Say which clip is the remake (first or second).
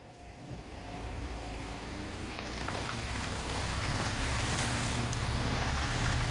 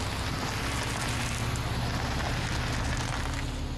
first